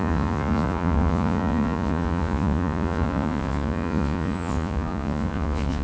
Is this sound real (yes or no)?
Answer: no